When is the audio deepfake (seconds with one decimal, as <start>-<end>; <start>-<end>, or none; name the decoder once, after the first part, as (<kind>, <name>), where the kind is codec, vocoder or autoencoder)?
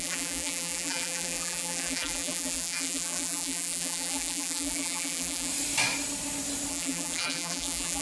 0.0-5.5 (vocoder, BigVGAN v2); 6.7-8.0